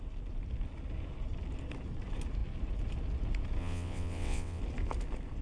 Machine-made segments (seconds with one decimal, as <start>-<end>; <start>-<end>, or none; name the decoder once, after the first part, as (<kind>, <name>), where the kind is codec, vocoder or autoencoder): 3.6-4.6 (vocoder, WaveNeXt)